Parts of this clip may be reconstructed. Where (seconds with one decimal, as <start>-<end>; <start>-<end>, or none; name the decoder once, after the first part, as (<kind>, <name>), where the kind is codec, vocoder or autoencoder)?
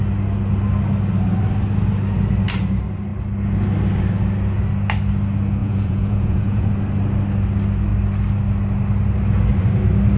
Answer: 5.6-6.7 (vocoder, Vocos)